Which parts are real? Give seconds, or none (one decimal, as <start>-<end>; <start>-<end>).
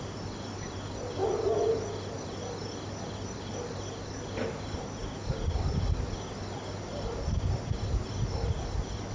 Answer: 0.0-9.1